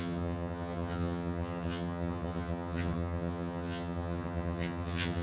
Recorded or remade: remade